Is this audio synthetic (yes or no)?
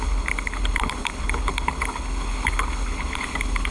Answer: yes